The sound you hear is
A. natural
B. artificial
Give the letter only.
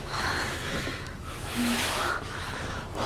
B